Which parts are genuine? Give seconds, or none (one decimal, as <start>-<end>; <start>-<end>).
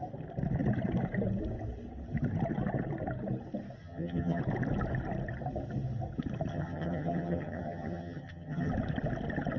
0.0-3.8; 4.4-6.5; 8.7-9.6